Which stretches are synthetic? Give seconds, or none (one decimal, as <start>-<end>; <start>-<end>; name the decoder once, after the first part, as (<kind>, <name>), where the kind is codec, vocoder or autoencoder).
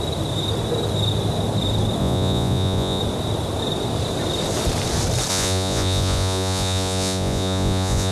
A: 2.0-3.0 (vocoder, Vocos); 5.3-8.1